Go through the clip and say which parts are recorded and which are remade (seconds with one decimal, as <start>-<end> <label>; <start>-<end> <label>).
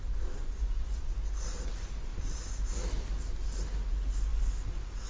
0.0-0.4 recorded; 0.4-1.1 remade; 1.1-5.1 recorded